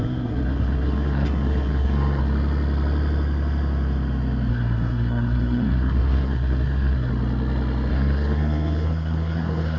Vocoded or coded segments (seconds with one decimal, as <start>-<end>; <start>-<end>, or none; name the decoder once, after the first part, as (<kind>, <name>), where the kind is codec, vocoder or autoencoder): 0.0-2.2 (codec, SNAC); 4.5-7.1; 7.9-9.8